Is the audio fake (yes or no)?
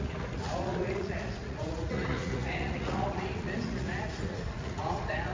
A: yes